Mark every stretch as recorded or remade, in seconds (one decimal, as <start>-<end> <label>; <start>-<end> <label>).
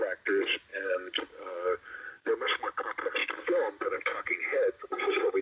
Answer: 0.0-0.7 recorded; 0.7-2.3 remade; 2.3-3.2 recorded; 3.2-5.4 remade